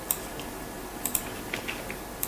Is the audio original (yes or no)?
yes